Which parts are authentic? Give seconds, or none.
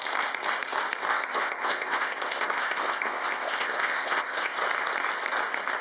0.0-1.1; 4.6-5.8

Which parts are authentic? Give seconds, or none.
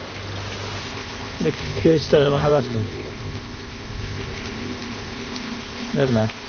0.0-0.8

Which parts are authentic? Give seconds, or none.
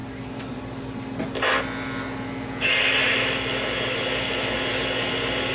0.0-5.5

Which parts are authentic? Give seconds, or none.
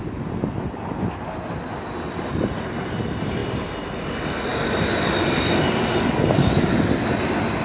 0.0-7.6